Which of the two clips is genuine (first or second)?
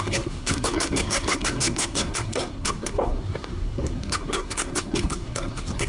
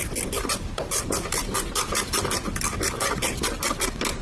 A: second